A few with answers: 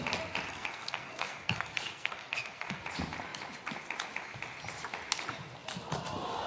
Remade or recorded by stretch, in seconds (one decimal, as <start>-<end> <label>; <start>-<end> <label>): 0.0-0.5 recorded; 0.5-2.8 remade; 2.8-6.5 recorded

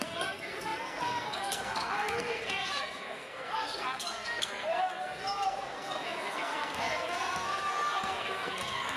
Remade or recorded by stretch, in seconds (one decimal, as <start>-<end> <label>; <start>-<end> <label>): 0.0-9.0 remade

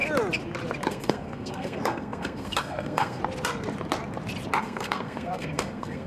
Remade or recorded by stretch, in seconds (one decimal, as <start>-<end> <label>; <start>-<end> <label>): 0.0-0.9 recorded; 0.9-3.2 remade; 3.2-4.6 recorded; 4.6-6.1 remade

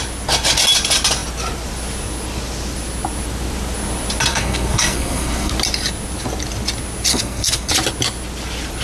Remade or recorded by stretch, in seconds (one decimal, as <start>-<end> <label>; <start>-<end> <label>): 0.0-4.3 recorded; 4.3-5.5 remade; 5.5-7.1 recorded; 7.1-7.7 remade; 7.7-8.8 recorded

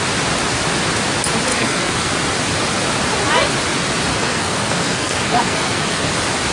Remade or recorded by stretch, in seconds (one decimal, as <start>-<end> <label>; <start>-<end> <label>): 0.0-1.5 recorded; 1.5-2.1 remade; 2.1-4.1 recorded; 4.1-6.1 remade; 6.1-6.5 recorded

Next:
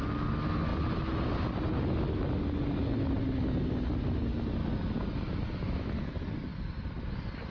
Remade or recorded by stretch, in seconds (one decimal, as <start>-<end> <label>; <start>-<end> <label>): 0.0-7.5 recorded

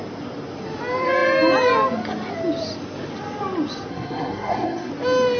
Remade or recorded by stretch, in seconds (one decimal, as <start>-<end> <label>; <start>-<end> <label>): 0.0-3.9 recorded; 3.9-4.9 remade; 4.9-5.4 recorded